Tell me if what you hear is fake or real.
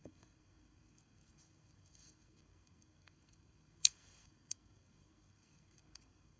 fake